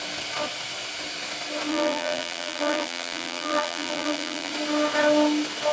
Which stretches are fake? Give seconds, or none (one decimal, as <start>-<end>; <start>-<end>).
1.7-4.5